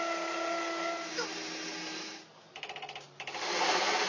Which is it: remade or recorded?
recorded